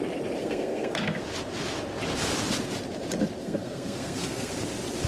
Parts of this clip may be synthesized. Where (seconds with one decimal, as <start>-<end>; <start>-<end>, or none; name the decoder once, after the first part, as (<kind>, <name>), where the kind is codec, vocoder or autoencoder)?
0.4-1.2 (codec, SNAC); 3.4-4.5